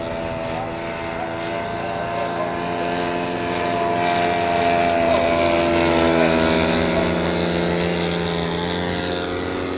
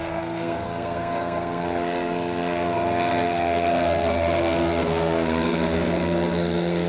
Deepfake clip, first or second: second